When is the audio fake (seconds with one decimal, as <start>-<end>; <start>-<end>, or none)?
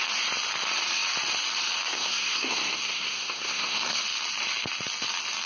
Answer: 1.9-4.0